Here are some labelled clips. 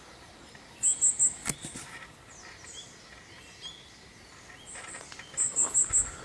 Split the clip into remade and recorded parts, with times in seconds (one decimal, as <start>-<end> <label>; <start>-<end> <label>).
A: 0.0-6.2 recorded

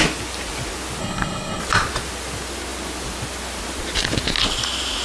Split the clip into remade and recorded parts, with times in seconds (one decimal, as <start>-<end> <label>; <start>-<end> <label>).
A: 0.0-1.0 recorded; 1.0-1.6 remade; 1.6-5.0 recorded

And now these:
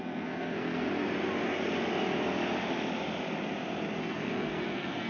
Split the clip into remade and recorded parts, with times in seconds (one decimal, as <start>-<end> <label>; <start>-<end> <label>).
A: 0.0-0.9 remade; 0.9-4.0 recorded; 4.0-5.1 remade

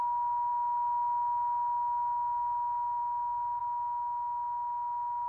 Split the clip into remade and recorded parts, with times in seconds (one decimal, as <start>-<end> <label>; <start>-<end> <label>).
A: 0.0-5.3 recorded

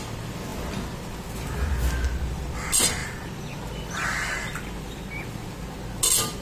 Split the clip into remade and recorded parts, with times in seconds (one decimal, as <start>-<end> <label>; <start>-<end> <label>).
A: 0.0-6.4 recorded